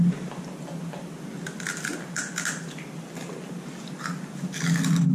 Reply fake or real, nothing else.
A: real